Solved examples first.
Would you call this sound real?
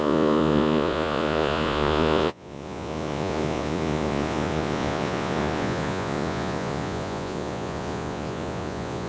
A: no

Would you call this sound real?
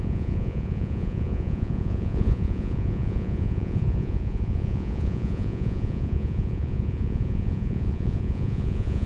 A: no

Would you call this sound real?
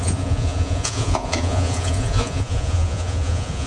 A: no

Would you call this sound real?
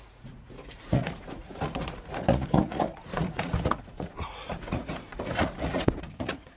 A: no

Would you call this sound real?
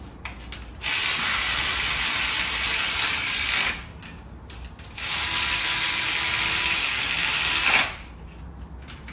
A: yes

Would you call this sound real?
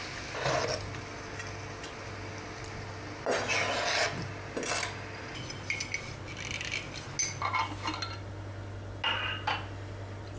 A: yes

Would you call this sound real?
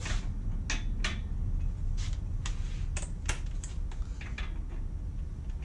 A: yes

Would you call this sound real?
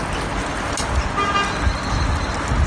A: yes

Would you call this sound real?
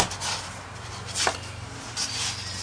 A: yes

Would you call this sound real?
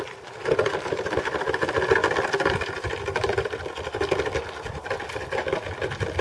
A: yes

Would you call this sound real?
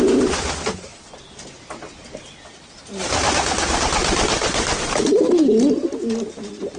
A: yes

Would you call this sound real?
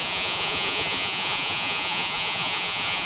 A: no